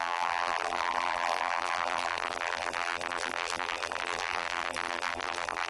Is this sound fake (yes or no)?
yes